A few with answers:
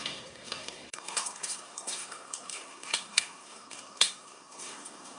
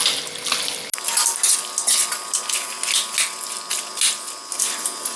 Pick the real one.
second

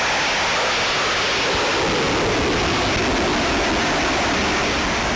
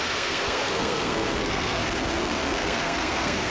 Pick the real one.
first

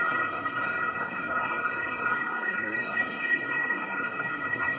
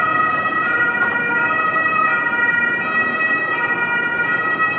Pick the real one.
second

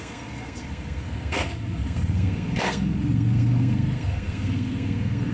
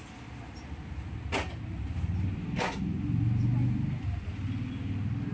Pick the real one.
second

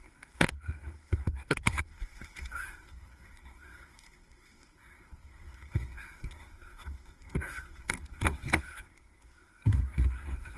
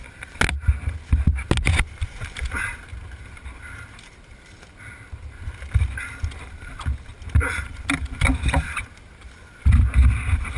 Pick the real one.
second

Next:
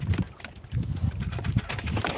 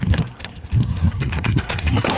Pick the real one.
first